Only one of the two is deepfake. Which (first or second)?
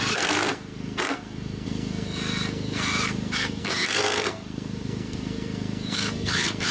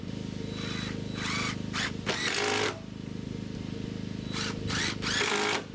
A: first